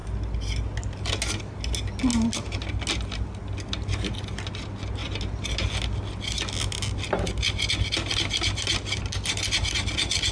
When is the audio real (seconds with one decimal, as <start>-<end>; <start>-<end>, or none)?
0.0-10.3